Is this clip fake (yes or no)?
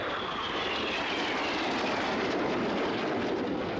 no